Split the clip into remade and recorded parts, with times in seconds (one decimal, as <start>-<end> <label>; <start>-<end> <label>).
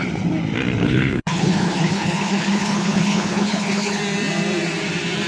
0.0-0.8 recorded; 0.8-4.0 remade; 4.0-5.3 recorded